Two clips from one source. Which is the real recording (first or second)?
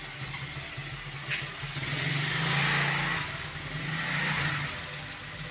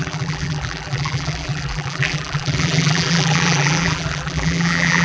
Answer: first